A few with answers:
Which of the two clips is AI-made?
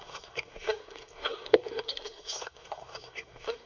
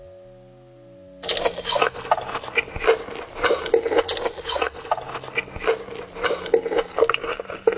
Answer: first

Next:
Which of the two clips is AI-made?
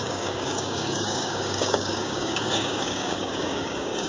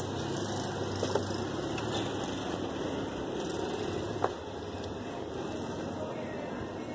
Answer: first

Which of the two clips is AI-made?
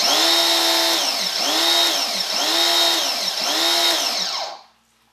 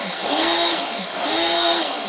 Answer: second